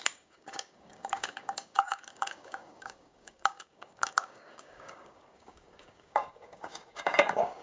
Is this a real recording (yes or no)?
no